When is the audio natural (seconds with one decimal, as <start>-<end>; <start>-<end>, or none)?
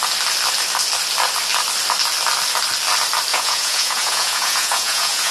0.0-3.3